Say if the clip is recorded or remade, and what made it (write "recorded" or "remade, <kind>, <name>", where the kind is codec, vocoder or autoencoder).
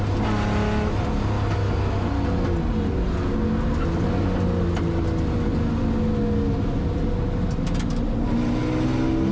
recorded